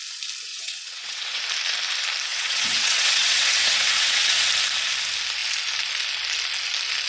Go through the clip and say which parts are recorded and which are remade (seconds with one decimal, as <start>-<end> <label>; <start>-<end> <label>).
0.0-0.5 recorded; 0.5-1.4 remade; 1.4-2.3 recorded; 2.3-4.5 remade; 4.5-7.1 recorded